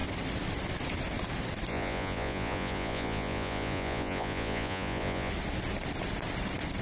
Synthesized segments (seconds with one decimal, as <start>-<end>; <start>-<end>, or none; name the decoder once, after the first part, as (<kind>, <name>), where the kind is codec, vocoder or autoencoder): 1.7-5.3 (vocoder, Vocos)